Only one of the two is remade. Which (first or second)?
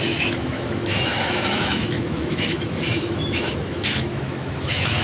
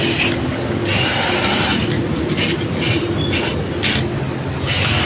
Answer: first